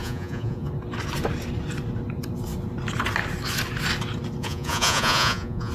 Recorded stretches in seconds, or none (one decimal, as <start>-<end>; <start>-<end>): 0.7-4.4